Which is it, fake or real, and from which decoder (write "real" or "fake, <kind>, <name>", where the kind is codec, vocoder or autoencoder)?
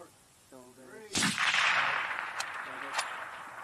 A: fake, vocoder, Vocos